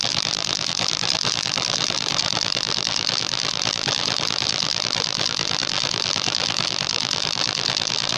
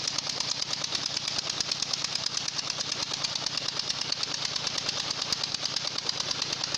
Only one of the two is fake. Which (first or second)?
first